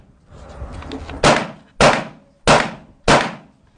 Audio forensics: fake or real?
real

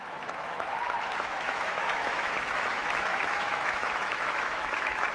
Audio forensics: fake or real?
fake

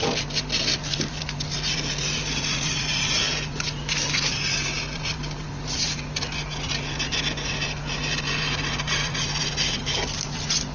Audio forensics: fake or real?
real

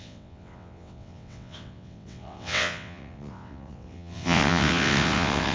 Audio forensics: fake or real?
fake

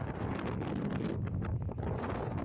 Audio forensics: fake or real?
real